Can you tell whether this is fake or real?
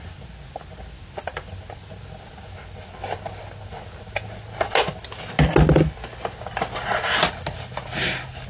real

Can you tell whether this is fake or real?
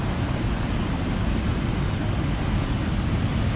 real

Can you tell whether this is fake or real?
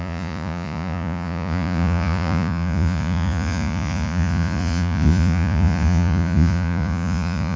fake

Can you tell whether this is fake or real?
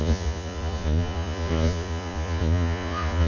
fake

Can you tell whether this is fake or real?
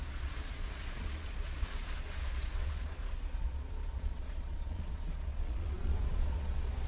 fake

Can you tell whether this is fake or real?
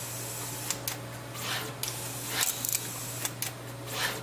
real